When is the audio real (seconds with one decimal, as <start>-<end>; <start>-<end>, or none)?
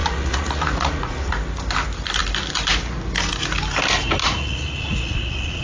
1.3-4.2